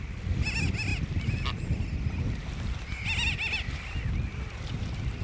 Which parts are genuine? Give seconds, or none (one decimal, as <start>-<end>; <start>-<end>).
0.0-5.2